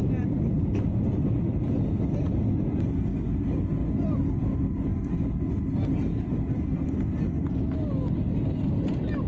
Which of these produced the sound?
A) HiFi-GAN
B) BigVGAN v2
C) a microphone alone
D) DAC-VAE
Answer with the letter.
C